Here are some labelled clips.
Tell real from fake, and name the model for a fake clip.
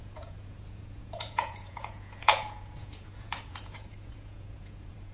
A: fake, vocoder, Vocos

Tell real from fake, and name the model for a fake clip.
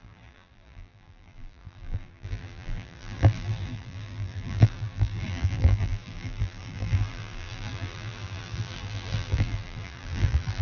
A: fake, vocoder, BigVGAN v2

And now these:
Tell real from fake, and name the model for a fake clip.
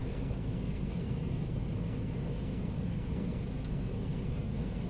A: fake, codec, SNAC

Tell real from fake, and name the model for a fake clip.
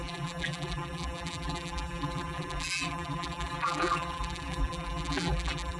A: fake, vocoder, BigVGAN v2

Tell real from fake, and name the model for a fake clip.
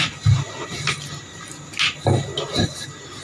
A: real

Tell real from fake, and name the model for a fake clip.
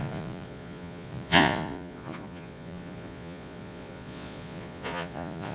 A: fake, vocoder, Vocos